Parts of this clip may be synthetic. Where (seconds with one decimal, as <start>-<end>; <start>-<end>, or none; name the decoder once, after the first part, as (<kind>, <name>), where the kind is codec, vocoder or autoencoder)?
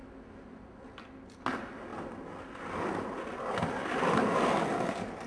none